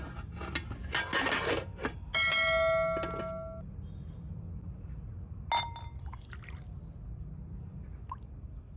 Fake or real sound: real